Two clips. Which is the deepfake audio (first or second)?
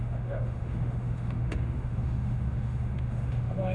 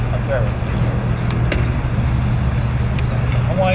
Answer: first